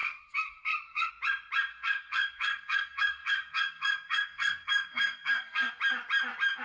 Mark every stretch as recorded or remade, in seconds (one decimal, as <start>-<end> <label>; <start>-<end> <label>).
0.0-1.1 remade; 1.1-1.7 recorded; 1.7-5.7 remade; 5.7-6.6 recorded